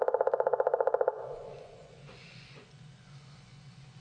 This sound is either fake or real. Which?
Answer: fake